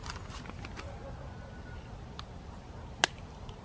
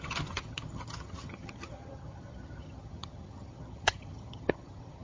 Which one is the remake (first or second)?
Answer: second